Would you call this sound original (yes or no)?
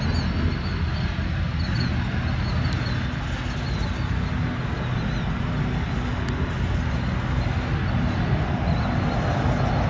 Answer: yes